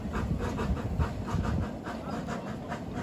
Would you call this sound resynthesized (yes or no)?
no